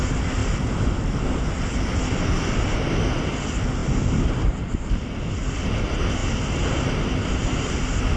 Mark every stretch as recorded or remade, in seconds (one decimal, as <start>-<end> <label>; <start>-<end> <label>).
0.0-8.2 recorded